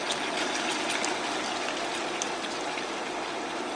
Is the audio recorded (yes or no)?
yes